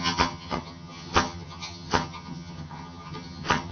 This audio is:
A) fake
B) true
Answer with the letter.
A